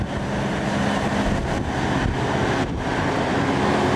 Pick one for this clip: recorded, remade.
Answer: recorded